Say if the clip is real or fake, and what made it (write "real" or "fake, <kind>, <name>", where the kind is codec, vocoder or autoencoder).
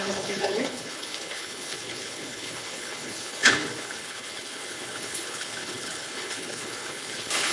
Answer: fake, codec, HILCodec